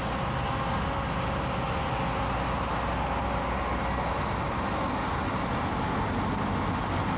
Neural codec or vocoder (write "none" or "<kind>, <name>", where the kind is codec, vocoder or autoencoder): none